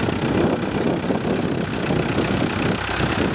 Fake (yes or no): no